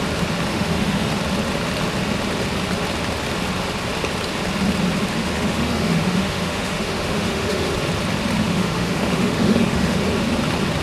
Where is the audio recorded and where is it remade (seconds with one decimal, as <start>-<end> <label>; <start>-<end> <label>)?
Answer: 0.0-0.5 recorded; 0.5-1.1 remade; 1.1-5.2 recorded; 5.2-7.7 remade; 7.7-8.4 recorded; 8.4-10.0 remade; 10.0-10.8 recorded